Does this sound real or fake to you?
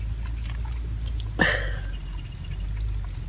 real